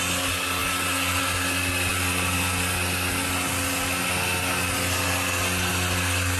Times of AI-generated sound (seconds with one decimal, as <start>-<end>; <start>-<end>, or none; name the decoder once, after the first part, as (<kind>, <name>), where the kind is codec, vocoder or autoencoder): none